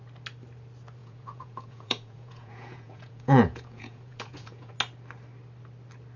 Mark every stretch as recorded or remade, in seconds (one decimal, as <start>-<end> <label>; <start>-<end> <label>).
0.0-1.0 recorded; 1.0-4.7 remade; 4.7-6.2 recorded

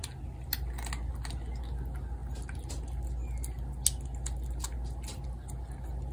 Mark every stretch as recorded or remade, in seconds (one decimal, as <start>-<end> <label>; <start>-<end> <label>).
0.0-6.1 recorded

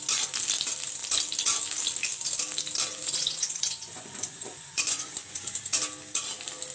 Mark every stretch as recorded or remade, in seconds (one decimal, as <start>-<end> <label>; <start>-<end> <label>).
0.0-2.9 recorded; 2.9-5.6 remade; 5.6-6.7 recorded

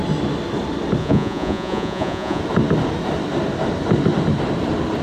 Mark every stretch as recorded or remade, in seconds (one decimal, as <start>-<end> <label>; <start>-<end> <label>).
0.0-1.0 recorded; 1.0-2.4 remade; 2.4-5.0 recorded